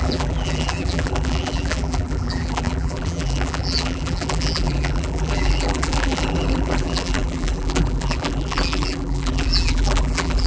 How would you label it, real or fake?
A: fake